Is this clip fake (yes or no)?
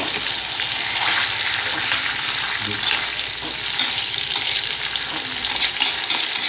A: no